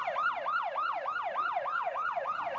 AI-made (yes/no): no